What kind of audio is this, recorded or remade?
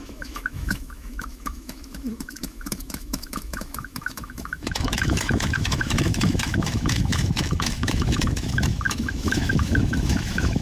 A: remade